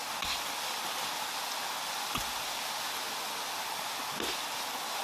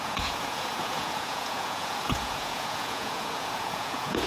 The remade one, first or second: second